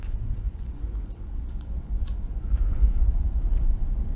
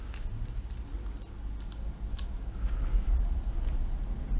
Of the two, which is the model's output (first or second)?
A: first